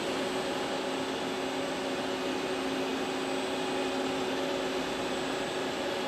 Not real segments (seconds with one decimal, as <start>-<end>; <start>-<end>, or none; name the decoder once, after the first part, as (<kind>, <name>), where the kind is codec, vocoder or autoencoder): none